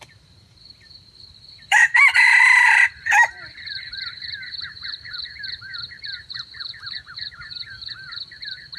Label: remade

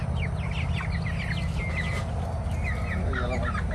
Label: recorded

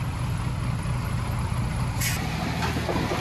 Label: recorded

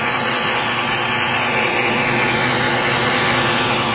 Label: recorded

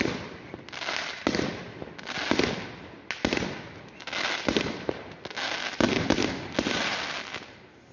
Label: recorded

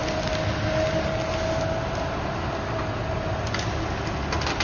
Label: recorded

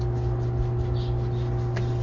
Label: recorded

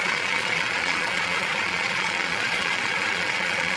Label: remade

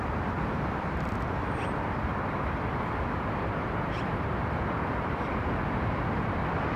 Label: remade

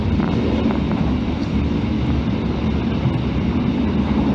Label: recorded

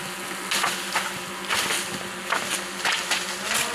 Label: recorded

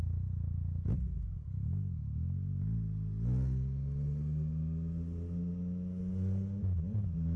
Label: recorded